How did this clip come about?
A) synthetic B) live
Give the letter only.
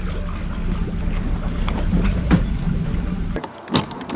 B